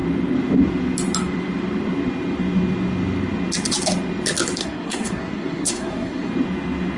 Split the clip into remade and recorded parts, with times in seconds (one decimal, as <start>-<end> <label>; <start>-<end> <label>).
0.0-4.6 recorded; 4.6-6.3 remade; 6.3-7.0 recorded